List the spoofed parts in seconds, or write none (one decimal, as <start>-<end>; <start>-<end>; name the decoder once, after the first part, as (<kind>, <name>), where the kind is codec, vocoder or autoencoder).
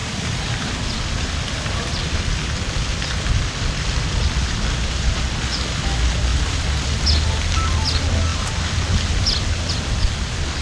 0.0-4.6 (vocoder, BigVGAN v2); 6.3-7.0; 8.3-9.7